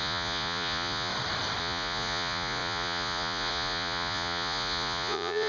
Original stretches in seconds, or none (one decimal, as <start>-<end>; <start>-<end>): 1.1-1.6